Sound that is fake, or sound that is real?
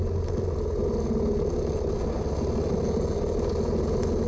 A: real